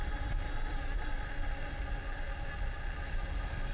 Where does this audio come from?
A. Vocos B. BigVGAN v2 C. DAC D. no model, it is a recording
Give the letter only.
D